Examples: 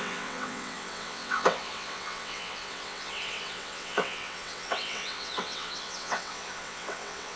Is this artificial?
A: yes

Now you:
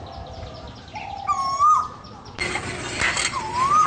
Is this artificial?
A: no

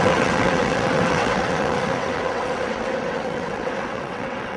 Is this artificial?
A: yes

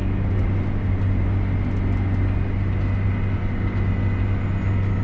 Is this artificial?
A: no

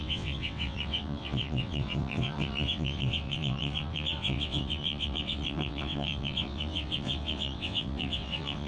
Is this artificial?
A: yes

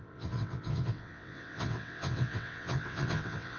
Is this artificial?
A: yes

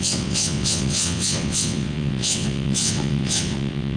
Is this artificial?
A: yes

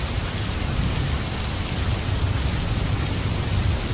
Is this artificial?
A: no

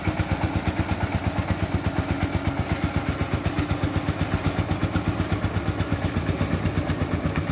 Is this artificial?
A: no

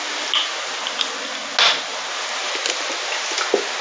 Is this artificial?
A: no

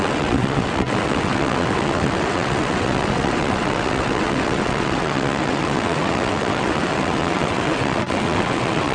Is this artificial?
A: yes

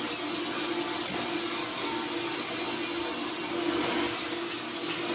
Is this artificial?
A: no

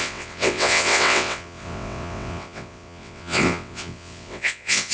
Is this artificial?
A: yes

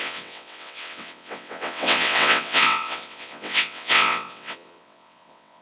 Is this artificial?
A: yes